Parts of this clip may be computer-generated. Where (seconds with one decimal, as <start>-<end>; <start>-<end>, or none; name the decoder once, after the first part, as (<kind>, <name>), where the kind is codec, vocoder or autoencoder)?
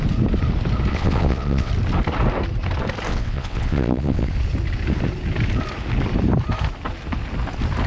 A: 0.9-1.7 (vocoder, WaveNeXt); 3.1-4.3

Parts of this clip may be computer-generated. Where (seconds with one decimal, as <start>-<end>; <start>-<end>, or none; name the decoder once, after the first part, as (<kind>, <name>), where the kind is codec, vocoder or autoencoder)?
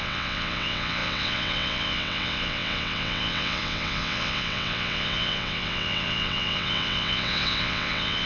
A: 0.0-8.3 (vocoder, WaveNeXt)